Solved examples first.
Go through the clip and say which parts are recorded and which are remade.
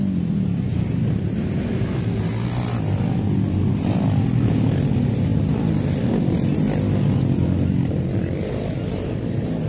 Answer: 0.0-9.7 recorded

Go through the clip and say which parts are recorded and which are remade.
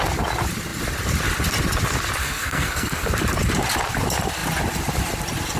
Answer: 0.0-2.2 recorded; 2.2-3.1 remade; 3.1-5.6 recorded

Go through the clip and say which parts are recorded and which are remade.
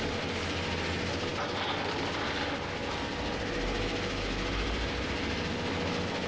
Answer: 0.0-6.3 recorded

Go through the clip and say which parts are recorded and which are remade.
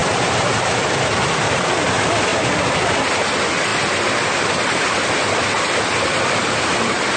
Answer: 0.0-1.7 remade; 1.7-7.2 recorded